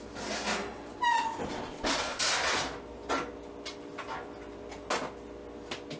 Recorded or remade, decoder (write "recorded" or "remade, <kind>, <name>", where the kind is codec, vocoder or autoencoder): recorded